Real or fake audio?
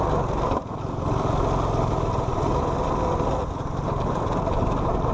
real